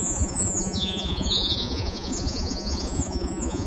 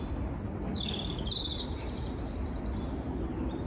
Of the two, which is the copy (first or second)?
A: first